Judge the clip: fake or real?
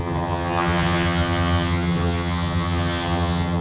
fake